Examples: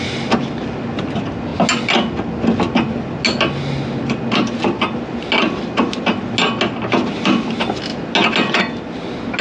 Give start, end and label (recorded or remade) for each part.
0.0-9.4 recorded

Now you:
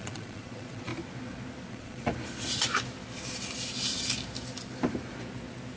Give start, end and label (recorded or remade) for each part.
0.0-0.9 remade; 0.9-1.7 recorded; 1.7-2.1 remade; 2.1-5.8 recorded